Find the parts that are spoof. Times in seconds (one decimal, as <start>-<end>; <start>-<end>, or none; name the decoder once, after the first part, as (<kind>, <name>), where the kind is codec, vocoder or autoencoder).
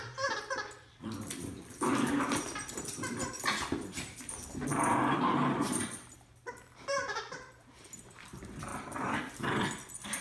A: 0.0-10.2 (vocoder, BigVGAN v2)